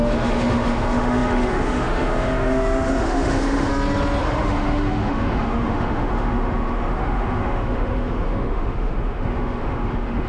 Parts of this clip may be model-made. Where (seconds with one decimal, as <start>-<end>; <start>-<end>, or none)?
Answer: 0.0-3.7; 4.2-10.3